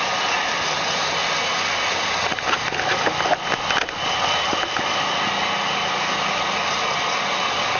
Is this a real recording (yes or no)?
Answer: yes